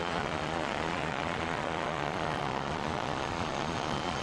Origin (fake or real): fake